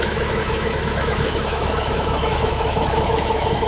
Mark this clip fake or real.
fake